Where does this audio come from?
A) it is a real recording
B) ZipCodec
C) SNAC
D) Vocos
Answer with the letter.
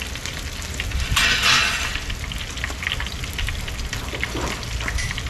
A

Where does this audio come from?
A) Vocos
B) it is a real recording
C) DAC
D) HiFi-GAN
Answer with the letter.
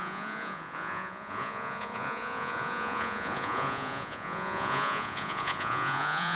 A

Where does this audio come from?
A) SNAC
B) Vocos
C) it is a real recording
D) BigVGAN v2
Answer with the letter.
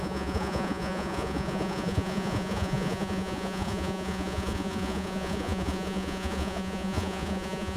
B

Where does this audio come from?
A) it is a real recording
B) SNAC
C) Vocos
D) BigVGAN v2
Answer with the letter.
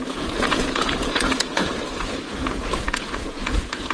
C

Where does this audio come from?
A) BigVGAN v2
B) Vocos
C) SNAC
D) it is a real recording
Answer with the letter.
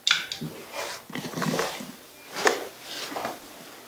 D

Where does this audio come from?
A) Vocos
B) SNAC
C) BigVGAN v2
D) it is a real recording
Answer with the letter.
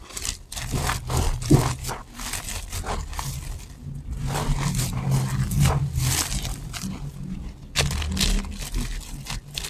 D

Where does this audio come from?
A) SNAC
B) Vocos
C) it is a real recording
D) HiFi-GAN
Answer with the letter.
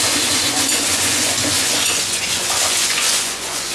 B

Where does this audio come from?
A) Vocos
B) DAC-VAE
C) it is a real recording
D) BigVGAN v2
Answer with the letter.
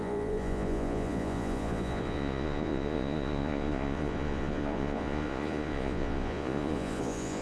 A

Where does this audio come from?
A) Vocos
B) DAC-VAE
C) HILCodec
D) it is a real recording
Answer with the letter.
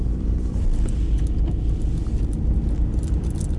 D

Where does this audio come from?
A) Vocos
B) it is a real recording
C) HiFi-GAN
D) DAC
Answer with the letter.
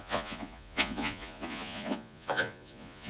A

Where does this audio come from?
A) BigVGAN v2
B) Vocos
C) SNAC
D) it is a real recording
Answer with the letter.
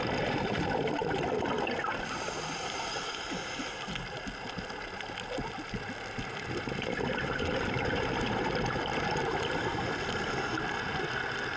D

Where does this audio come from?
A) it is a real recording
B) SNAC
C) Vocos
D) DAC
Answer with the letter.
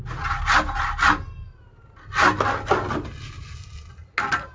A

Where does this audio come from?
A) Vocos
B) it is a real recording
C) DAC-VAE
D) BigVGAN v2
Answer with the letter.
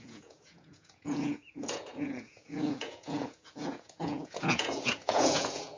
A